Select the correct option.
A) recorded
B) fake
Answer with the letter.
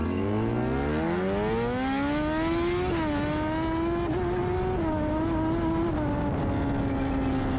A